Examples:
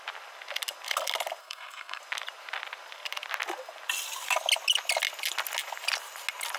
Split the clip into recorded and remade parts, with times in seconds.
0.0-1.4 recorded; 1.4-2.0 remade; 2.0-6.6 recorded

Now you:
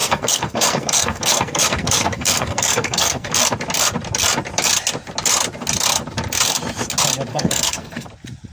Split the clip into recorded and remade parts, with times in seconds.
0.0-3.3 remade; 3.3-7.3 recorded; 7.3-8.1 remade; 8.1-8.5 recorded